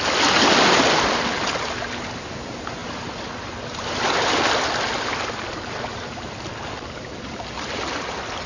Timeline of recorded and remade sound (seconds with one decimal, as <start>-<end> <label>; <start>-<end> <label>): 0.0-2.8 recorded; 2.8-4.5 remade; 4.5-5.9 recorded; 5.9-6.6 remade; 6.6-8.5 recorded